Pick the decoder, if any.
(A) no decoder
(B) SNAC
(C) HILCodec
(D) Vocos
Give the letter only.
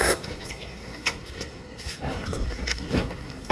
B